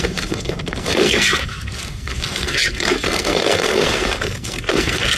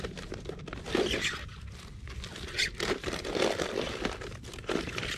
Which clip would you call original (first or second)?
second